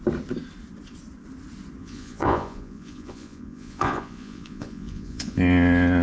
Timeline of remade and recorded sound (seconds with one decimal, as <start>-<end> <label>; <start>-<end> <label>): 0.0-1.8 recorded; 1.8-5.4 remade; 5.4-6.0 recorded

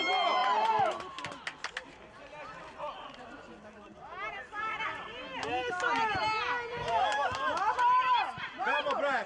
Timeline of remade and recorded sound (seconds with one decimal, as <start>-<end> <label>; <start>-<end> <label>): 0.0-0.4 recorded; 0.4-1.3 remade; 1.3-9.3 recorded

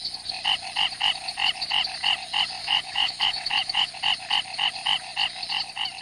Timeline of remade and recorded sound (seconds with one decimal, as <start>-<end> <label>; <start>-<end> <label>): 0.0-2.6 recorded; 2.6-3.9 remade; 3.9-6.0 recorded

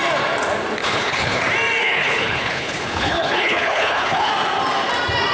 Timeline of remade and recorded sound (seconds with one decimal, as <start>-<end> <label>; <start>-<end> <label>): 0.0-0.8 recorded; 0.8-1.4 remade; 1.4-1.8 recorded; 1.8-4.3 remade; 4.3-5.3 recorded

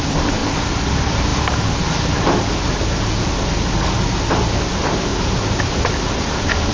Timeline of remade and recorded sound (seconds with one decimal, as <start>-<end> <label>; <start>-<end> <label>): 0.0-0.4 remade; 0.4-0.9 recorded; 0.9-1.3 remade; 1.3-4.3 recorded; 4.3-5.1 remade; 5.1-5.6 recorded; 5.6-6.7 remade